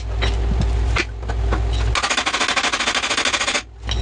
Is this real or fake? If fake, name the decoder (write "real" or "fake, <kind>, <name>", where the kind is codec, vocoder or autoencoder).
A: real